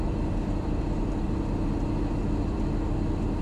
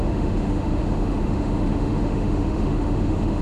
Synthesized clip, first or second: second